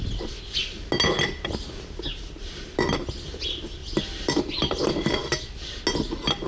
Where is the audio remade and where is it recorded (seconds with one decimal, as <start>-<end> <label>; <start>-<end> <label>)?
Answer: 0.0-6.5 recorded